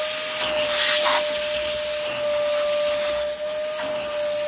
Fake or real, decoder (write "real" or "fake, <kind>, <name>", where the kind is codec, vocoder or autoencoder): real